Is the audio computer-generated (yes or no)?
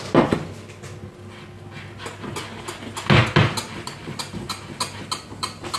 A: no